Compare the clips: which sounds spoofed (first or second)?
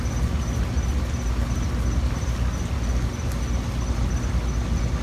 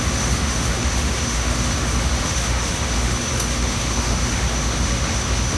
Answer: second